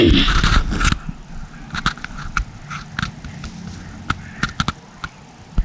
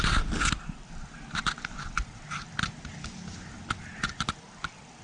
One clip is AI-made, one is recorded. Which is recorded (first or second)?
first